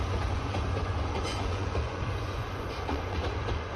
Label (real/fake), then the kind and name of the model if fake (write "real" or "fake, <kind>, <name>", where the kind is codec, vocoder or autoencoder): fake, vocoder, Vocos